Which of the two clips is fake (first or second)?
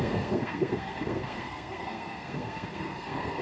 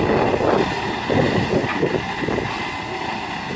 first